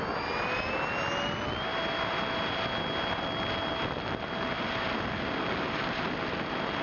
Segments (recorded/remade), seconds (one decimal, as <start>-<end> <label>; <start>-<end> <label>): 0.0-6.8 recorded